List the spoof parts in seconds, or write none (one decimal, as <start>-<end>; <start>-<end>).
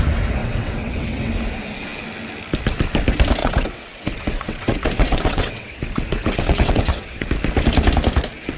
0.4-1.3; 3.4-7.3